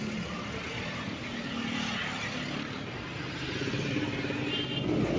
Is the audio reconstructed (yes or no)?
no